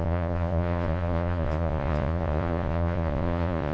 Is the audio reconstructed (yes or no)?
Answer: yes